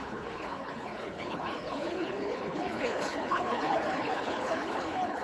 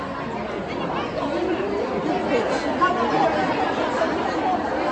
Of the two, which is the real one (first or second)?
second